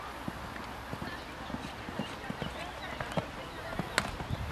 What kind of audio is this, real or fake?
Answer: real